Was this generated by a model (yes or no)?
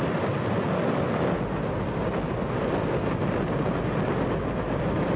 no